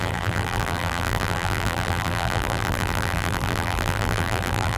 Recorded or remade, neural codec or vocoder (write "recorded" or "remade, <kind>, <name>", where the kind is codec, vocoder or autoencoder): remade, vocoder, BigVGAN v2